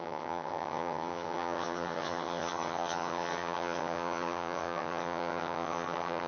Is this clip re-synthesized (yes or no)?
yes